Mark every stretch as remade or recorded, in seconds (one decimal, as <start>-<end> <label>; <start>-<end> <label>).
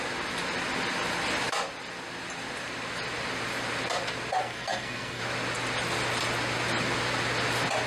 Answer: 0.0-4.4 recorded; 4.4-5.2 remade; 5.2-7.9 recorded